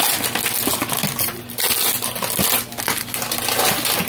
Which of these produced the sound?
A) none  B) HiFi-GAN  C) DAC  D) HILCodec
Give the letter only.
A